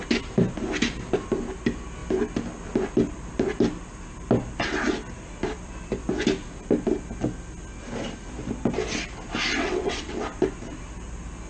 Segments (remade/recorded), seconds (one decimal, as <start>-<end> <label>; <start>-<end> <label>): 0.0-9.6 recorded; 9.6-10.2 remade; 10.2-11.5 recorded